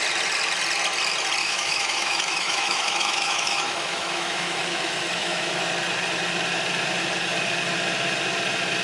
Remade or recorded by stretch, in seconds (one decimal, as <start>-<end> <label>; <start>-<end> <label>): 0.0-1.4 recorded; 1.4-5.5 remade; 5.5-8.8 recorded